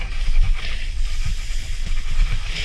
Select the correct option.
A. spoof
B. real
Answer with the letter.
B